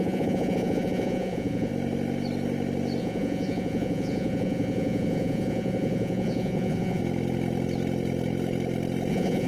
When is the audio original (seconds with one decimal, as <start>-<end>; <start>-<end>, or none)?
1.7-3.0; 7.0-9.1